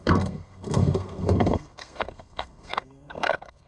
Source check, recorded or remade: remade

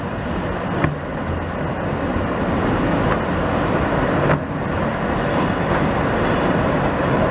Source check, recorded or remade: recorded